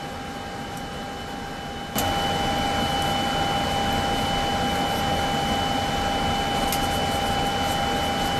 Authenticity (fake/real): real